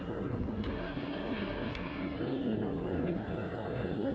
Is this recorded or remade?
remade